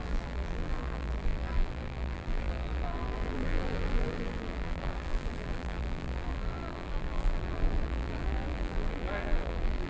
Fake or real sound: fake